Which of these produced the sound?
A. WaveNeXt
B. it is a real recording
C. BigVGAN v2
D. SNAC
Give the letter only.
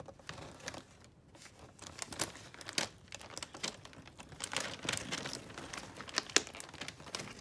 B